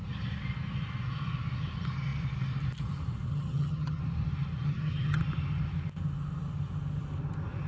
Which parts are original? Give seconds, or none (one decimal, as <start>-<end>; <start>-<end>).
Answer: 0.0-3.3; 4.0-4.6; 5.2-7.7